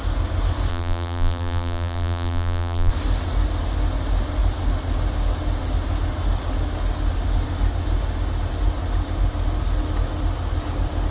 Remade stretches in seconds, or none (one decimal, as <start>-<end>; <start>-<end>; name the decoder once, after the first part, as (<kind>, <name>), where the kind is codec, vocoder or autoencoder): 0.7-2.9 (vocoder, BigVGAN v2)